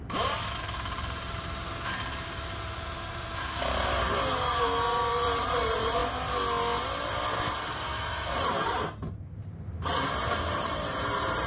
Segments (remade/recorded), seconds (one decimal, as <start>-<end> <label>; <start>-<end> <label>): 0.0-6.0 remade; 6.0-7.5 recorded; 7.5-11.5 remade